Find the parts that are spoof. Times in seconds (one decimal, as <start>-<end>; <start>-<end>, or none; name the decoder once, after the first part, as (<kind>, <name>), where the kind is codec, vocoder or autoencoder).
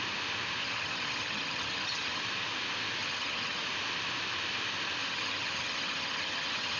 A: 0.6-2.2 (vocoder, HiFi-GAN); 3.0-3.6; 5.0-6.8